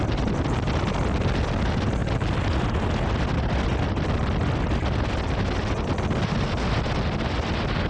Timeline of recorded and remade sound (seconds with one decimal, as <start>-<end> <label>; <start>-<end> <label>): 0.0-7.9 recorded